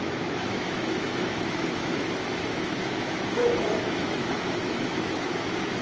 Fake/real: fake